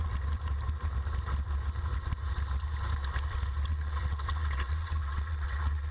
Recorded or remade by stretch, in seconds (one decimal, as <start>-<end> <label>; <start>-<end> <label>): 0.0-3.7 recorded; 3.7-5.9 remade